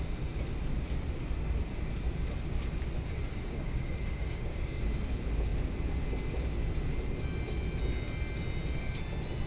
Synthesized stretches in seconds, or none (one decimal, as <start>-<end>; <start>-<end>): 3.3-4.8